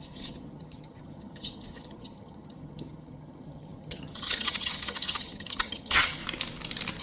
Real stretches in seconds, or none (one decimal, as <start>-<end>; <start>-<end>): 6.2-7.0